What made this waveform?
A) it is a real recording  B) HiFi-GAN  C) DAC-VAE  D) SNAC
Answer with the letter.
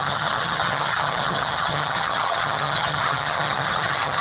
B